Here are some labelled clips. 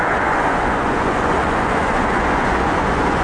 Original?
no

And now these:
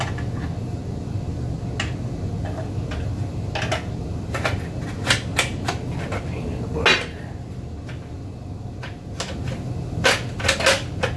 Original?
yes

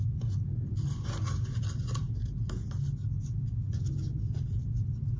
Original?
yes